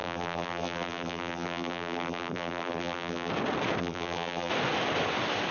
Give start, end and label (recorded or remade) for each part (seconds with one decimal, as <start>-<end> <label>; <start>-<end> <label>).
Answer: 0.0-3.3 remade; 3.3-3.8 recorded; 3.8-4.5 remade; 4.5-5.5 recorded